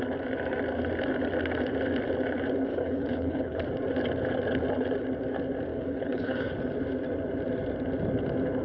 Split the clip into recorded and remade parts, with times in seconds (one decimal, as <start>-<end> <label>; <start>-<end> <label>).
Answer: 0.0-2.7 recorded; 2.7-3.6 remade; 3.6-5.7 recorded; 5.7-6.5 remade; 6.5-8.6 recorded